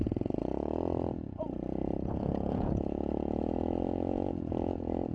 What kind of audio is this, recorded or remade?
remade